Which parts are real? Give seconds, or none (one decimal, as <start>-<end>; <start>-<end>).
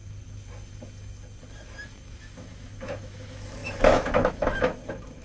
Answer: 0.0-2.2